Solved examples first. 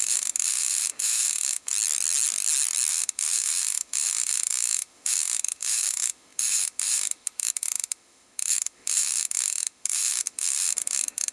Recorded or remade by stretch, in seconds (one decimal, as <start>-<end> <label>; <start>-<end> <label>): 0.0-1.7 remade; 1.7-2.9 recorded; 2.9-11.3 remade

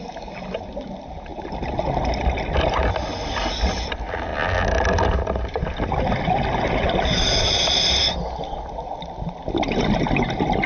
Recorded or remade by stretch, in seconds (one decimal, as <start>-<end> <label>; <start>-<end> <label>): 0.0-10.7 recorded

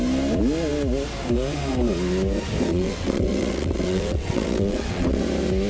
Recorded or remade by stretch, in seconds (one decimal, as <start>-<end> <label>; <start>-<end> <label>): 0.0-2.7 recorded; 2.7-5.2 remade; 5.2-5.7 recorded